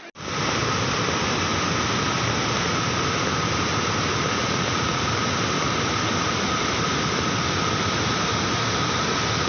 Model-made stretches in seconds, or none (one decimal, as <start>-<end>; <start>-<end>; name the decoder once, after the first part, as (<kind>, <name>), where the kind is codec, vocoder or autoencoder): 4.4-5.0 (vocoder, Vocos)